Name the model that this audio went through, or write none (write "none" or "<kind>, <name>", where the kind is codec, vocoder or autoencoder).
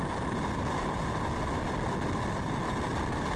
none